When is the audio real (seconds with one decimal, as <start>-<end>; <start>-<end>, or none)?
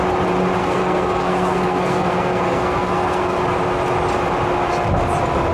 0.0-0.6; 3.4-5.5